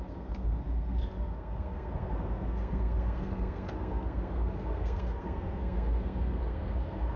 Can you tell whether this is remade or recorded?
remade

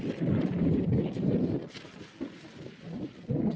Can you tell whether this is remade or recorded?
recorded